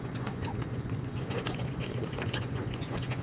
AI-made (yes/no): yes